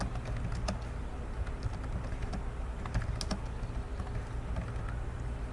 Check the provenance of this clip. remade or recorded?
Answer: recorded